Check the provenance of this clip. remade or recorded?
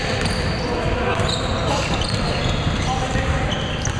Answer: recorded